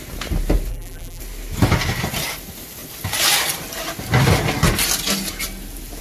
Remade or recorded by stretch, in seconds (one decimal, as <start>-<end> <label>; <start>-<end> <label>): 0.0-0.7 recorded; 0.7-1.2 remade; 1.2-6.0 recorded